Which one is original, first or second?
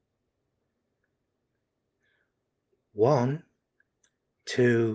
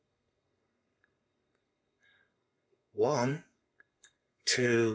first